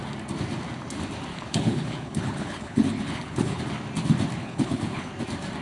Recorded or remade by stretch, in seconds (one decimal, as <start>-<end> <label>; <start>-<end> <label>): 0.0-1.3 recorded; 1.3-3.6 remade; 3.6-4.4 recorded; 4.4-5.1 remade; 5.1-5.6 recorded